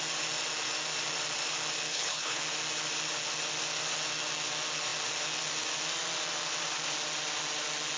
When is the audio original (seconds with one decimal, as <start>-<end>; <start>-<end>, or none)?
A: 0.0-1.9; 2.4-8.0